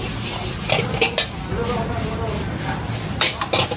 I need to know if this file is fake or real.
real